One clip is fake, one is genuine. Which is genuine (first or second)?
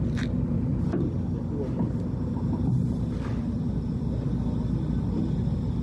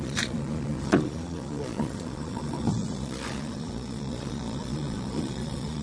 first